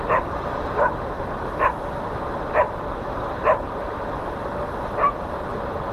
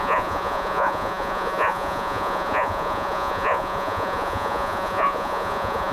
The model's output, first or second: second